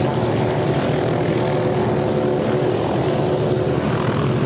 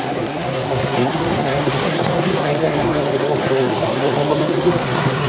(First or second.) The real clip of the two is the first